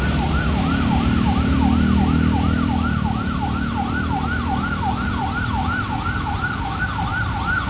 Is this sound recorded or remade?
recorded